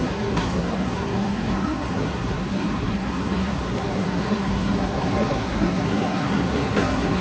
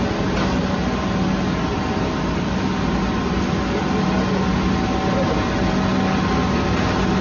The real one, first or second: second